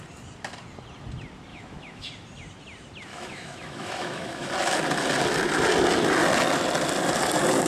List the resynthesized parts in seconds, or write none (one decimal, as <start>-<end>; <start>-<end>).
1.5-2.1; 3.1-4.5